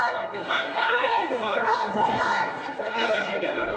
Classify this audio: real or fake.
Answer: fake